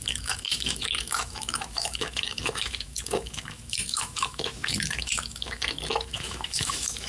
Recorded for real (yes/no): no